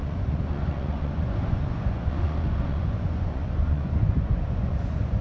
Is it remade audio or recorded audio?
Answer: remade